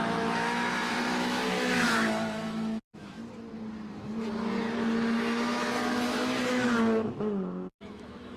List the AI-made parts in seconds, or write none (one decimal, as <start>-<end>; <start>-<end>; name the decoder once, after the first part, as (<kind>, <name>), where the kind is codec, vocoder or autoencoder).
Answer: 0.0-3.2 (autoencoder, DAC-VAE); 6.5-8.4